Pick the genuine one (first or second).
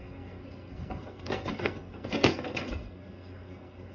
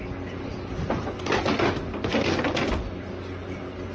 second